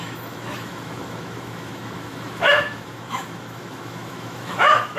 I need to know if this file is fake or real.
fake